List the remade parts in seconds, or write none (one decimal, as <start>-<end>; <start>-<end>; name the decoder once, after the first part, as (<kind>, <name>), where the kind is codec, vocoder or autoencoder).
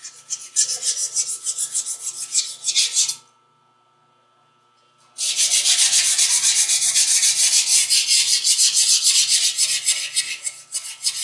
none